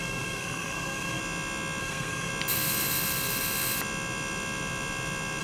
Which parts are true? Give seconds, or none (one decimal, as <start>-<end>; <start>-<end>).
1.2-1.8; 2.3-5.4